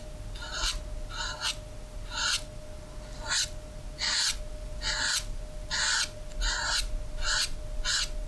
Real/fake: real